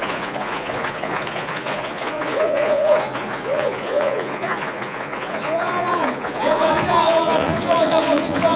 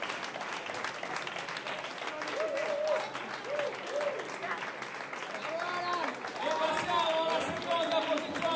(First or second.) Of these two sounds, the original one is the second